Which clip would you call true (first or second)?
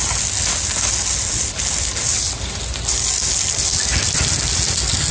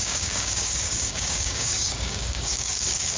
first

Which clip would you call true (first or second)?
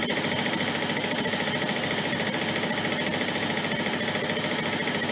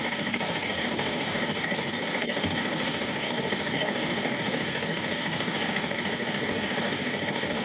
first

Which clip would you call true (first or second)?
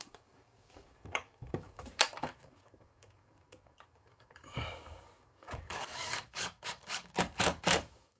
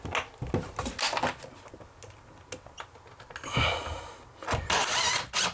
second